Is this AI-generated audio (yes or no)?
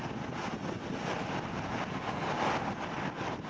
no